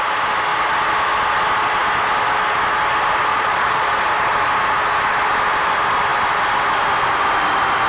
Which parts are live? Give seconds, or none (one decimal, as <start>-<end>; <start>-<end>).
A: 0.0-3.3; 3.9-7.9